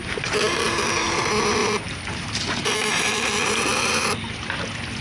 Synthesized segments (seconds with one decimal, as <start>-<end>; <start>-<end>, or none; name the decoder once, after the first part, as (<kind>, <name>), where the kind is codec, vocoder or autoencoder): 1.6-4.6 (vocoder, BigVGAN v2)